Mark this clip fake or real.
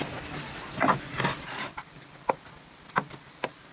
real